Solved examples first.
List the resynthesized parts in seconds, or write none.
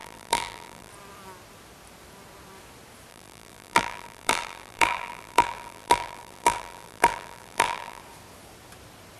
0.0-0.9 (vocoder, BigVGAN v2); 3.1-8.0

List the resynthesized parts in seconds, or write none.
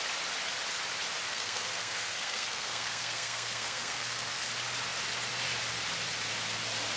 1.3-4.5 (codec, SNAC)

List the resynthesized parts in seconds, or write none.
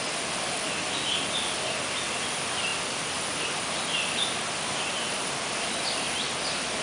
none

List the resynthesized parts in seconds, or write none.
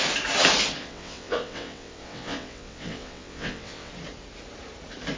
0.8-3.9 (vocoder, WaveNeXt)